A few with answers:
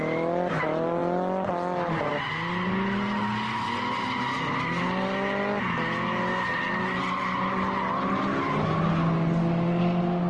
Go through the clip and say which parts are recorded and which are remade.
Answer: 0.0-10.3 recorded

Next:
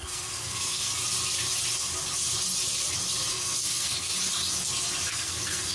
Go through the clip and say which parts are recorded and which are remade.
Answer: 0.0-0.9 remade; 0.9-3.3 recorded; 3.3-4.1 remade; 4.1-5.1 recorded; 5.1-5.7 remade